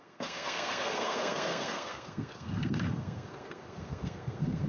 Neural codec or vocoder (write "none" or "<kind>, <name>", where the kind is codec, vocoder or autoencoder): codec, SNAC